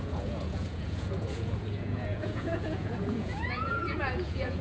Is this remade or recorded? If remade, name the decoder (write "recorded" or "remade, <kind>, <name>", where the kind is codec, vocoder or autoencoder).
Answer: remade, vocoder, Vocos